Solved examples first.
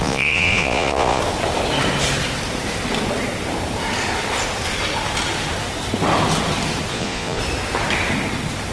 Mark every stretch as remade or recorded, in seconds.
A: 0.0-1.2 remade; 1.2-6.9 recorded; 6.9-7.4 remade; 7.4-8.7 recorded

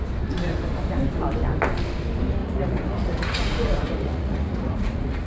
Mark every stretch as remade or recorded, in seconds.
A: 0.0-2.4 recorded; 2.4-5.3 remade

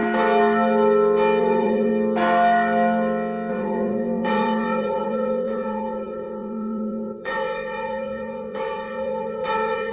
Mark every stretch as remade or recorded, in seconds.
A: 0.0-1.4 recorded; 1.4-1.9 remade; 1.9-3.5 recorded; 3.5-9.9 remade